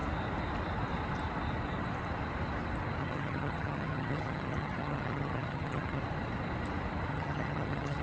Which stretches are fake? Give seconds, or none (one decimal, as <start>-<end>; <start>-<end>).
3.0-6.0; 7.1-8.0